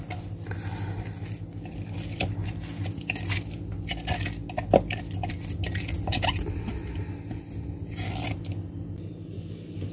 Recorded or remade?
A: recorded